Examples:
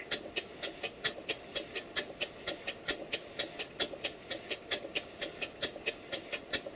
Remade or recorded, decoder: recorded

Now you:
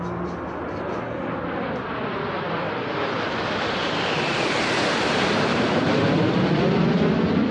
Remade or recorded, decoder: recorded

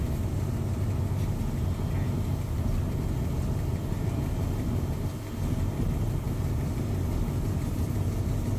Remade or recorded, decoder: recorded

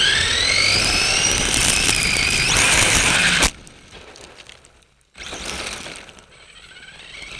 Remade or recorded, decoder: recorded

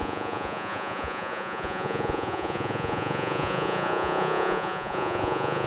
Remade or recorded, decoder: remade, vocoder, Vocos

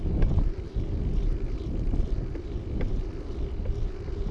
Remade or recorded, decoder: recorded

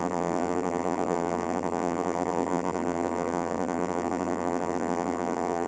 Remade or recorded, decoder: remade, vocoder, BigVGAN v2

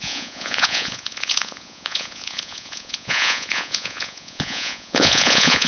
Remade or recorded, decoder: remade, vocoder, Vocos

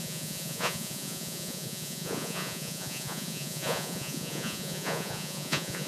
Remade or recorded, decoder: remade, vocoder, Vocos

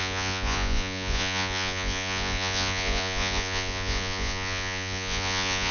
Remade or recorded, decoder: remade, vocoder, Vocos